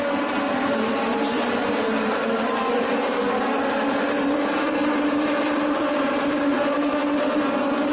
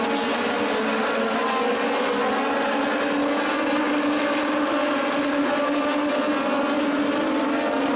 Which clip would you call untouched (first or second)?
second